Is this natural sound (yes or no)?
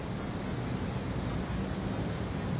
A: yes